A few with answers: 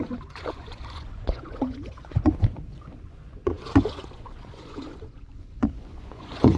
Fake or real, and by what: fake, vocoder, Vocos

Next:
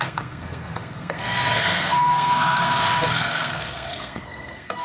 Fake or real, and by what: fake, codec, SNAC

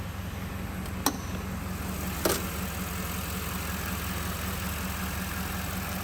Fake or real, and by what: real